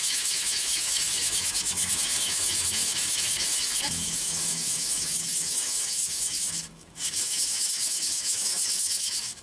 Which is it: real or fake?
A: fake